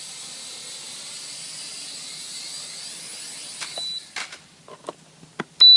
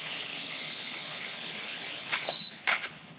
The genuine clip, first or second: first